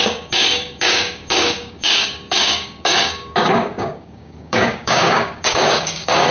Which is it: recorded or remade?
remade